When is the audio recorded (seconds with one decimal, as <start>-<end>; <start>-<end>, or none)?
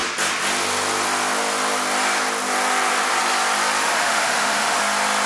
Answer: 0.0-3.8; 4.8-5.3